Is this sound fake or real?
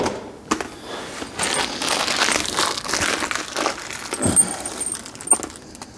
real